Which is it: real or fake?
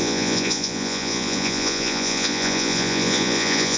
fake